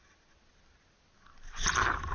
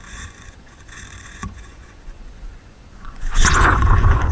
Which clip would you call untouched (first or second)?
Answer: first